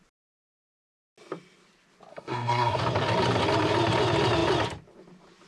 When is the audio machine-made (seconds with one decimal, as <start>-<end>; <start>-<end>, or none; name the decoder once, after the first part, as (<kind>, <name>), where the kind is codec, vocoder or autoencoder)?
2.1-2.8 (codec, SNAC)